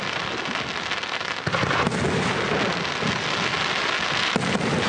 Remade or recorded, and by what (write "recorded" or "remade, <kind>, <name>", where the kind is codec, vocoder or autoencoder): recorded